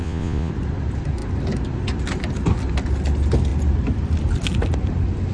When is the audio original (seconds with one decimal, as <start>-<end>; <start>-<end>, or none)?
0.5-5.3